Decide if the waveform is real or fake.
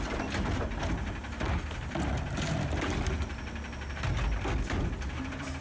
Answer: real